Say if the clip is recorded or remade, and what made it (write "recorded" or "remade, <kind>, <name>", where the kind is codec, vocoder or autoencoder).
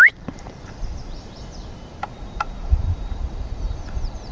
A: remade, vocoder, BigVGAN v2